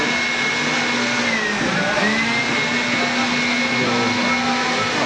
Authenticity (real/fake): real